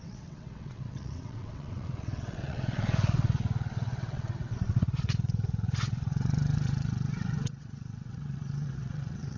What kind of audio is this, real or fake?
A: fake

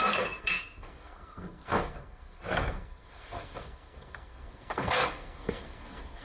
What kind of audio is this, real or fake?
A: fake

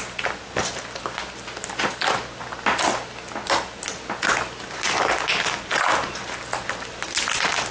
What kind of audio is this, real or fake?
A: real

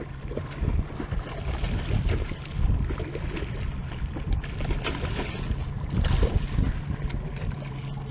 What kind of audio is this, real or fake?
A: real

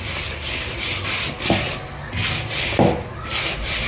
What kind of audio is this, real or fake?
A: real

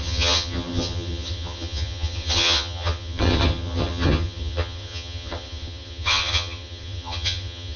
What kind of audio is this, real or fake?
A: fake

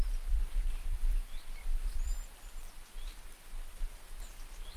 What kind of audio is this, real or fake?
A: real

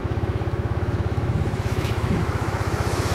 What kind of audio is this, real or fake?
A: fake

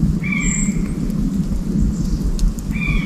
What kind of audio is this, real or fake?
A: real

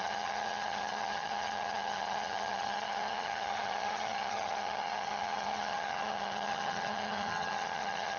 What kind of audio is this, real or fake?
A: fake